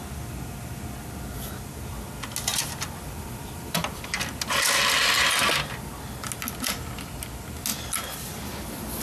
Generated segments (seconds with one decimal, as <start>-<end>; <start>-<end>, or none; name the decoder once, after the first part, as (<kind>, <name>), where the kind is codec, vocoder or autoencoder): 2.5-4.4 (vocoder, BigVGAN v2); 7.7-9.0